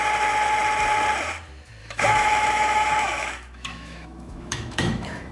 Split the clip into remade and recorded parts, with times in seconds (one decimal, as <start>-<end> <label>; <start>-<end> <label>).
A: 0.0-1.8 recorded; 1.8-5.3 remade